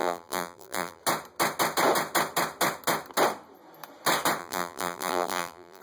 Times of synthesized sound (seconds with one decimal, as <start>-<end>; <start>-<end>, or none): 0.0-1.0; 4.4-5.8